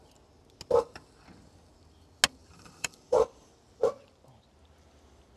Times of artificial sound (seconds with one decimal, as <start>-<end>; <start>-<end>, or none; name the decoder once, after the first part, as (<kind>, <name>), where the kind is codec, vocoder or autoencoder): 2.4-3.5 (vocoder, BigVGAN v2)